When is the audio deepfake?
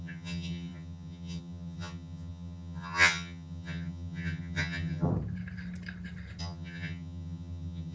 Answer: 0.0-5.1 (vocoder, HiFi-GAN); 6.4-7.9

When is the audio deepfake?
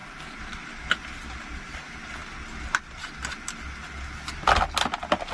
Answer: none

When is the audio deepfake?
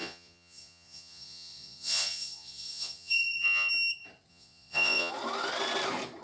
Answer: 0.0-3.7 (vocoder, Vocos); 4.3-5.1